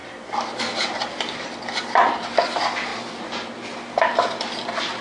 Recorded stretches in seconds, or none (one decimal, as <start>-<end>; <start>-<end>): 0.0-0.8; 2.9-5.0